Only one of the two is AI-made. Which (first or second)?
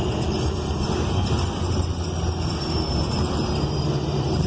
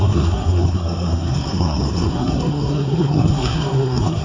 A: second